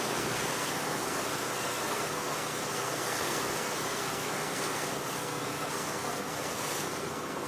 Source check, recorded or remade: remade